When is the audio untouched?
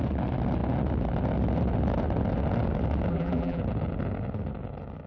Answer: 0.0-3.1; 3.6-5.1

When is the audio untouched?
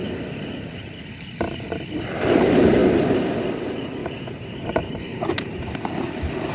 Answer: 0.0-4.0; 5.6-6.5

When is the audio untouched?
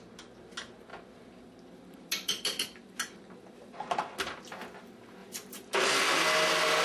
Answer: 0.0-0.9; 3.1-5.2; 5.9-6.8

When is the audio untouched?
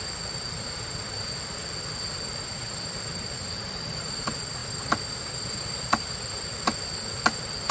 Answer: 0.0-7.7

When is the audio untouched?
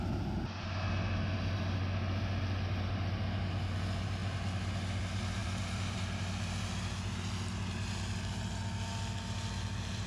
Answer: 0.0-5.4; 6.0-10.1